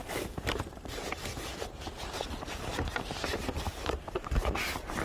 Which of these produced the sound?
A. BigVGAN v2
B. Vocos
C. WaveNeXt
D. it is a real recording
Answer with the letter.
A